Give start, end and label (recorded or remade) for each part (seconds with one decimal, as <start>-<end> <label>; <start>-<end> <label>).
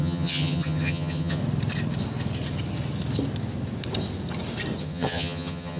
0.0-1.4 remade; 1.4-4.8 recorded; 4.8-5.8 remade